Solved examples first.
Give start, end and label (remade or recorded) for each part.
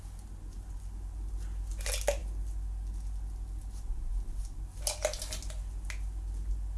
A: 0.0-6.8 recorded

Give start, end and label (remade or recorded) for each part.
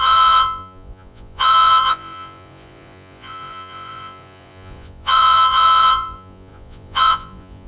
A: 0.0-7.7 remade